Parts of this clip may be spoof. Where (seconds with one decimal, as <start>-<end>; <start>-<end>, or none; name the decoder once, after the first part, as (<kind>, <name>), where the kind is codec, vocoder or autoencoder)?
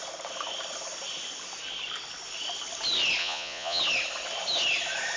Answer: 3.2-3.8 (vocoder, Vocos)